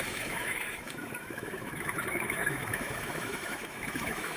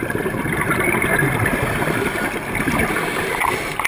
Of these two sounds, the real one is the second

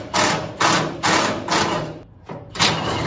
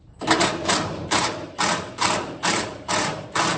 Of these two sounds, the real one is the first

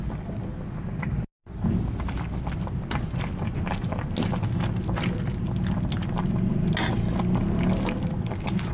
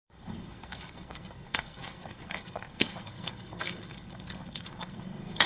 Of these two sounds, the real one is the first